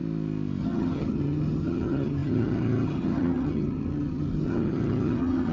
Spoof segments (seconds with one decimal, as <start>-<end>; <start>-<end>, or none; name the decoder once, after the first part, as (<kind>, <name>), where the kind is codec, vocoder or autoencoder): 0.6-5.5 (vocoder, HiFi-GAN)